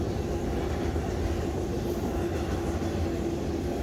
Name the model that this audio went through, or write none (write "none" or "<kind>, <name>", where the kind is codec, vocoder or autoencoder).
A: none